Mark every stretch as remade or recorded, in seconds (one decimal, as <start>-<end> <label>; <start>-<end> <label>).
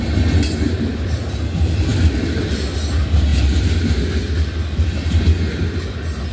0.0-6.3 recorded